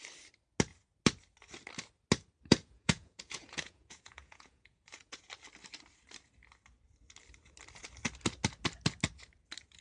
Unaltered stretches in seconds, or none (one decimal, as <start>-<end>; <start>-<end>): 0.0-2.5; 5.3-9.8

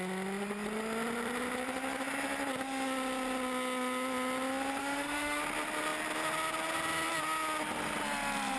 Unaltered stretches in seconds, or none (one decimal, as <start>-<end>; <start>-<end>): 0.0-4.8; 5.4-8.6

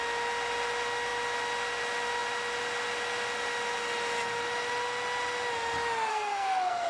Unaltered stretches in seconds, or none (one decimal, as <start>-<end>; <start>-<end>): 0.0-6.1

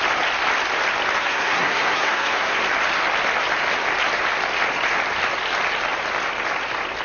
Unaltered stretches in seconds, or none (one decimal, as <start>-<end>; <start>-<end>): 0.0-1.2; 2.5-7.0

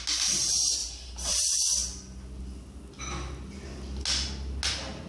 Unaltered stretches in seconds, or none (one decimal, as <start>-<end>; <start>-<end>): 0.0-0.8; 1.4-5.1

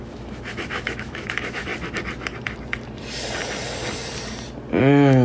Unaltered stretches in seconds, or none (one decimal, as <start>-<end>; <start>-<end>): 1.7-4.8